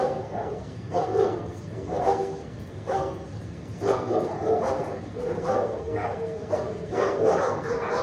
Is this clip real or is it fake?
fake